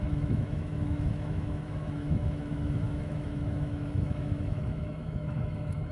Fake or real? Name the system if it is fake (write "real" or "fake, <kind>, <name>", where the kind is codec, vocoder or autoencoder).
fake, autoencoder, DAC-VAE